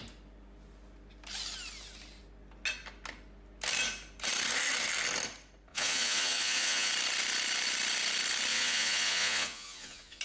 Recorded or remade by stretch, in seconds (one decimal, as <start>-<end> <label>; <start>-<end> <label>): 0.0-5.7 recorded; 5.7-6.9 remade; 6.9-8.5 recorded; 8.5-10.2 remade